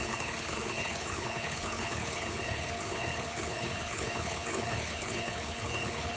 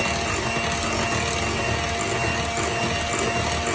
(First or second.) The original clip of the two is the second